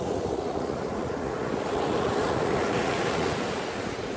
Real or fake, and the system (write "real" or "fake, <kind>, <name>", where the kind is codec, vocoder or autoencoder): fake, vocoder, Vocos